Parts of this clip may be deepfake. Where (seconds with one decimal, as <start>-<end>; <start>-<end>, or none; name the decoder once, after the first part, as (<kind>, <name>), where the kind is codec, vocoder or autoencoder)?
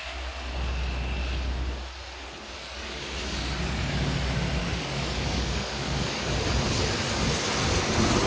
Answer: 2.6-3.7 (codec, DAC); 4.6-6.5